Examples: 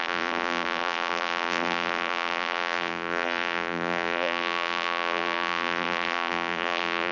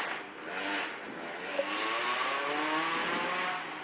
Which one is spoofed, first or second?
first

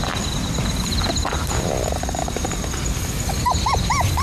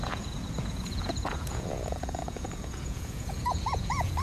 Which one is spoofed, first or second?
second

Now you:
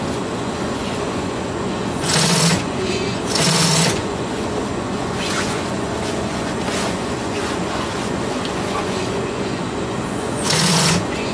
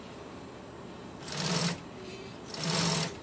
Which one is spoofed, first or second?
first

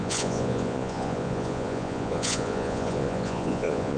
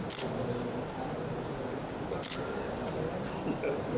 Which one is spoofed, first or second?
first